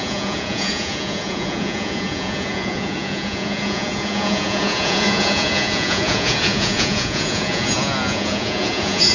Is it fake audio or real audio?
fake